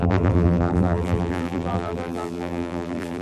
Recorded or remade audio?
remade